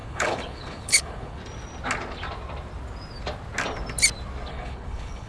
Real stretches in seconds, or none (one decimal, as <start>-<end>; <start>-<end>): 1.4-4.5